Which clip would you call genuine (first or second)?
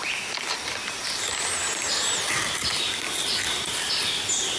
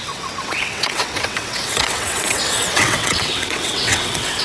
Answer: first